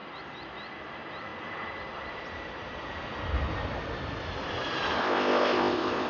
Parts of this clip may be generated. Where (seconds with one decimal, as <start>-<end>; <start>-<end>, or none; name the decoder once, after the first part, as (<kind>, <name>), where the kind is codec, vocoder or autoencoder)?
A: 5.0-6.1 (codec, ZipCodec)